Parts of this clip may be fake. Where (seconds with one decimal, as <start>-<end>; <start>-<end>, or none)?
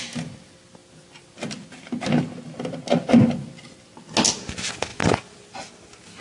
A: none